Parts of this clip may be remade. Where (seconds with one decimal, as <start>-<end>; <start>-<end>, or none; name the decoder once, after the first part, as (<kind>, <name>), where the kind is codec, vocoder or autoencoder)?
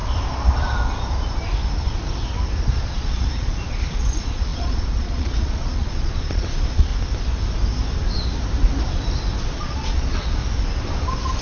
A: 2.7-6.9 (vocoder, Vocos); 9.4-10.4